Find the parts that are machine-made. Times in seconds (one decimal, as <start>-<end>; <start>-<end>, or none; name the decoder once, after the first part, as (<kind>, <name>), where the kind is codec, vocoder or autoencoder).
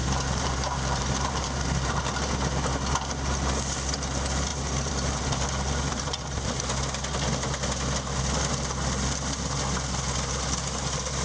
0.0-2.0 (vocoder, BigVGAN v2); 4.5-6.6